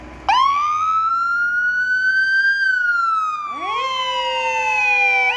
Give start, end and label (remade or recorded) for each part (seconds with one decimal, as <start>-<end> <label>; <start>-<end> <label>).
0.0-0.5 recorded; 0.5-1.1 remade; 1.1-5.4 recorded